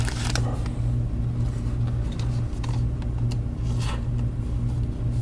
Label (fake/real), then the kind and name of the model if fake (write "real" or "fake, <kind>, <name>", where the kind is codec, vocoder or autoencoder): real